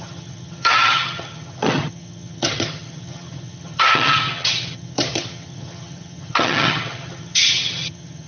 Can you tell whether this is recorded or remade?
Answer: remade